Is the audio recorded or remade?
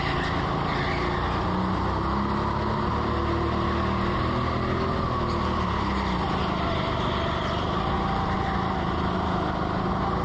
recorded